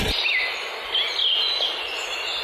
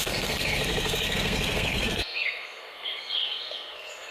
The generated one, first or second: second